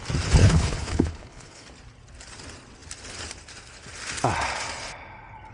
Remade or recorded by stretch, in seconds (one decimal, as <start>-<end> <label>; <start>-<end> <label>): 0.0-0.4 recorded; 0.4-1.7 remade; 1.7-5.5 recorded

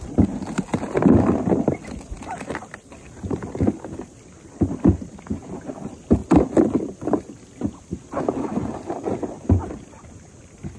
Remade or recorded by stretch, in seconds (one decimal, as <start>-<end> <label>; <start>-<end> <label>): 0.0-10.8 recorded